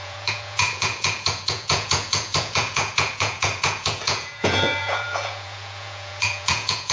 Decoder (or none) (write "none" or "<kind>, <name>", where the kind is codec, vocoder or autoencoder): vocoder, Vocos